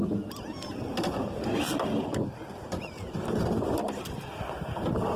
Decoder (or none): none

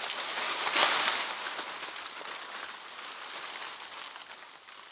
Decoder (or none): none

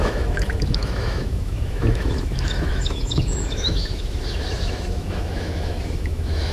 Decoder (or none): autoencoder, DAC-VAE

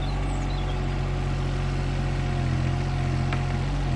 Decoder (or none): none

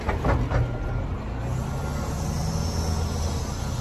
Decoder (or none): none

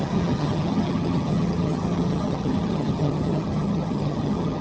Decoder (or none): vocoder, HiFi-GAN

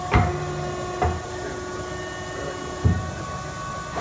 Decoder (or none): none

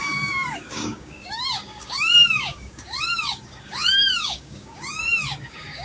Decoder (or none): codec, DAC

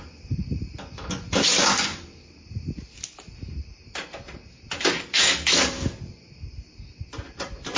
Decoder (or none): none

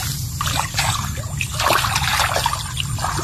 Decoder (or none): none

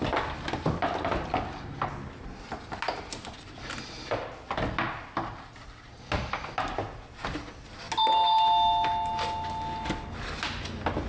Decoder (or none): none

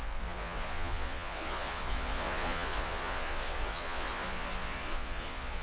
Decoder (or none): vocoder, Vocos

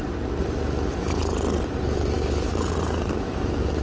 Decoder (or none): none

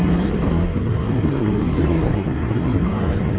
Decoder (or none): codec, SNAC